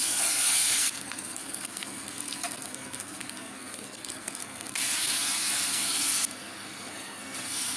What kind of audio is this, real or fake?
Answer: fake